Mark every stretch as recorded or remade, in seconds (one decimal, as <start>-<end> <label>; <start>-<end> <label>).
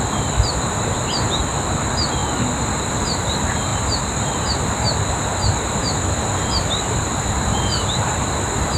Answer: 0.0-8.8 recorded